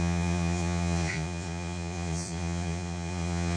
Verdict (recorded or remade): remade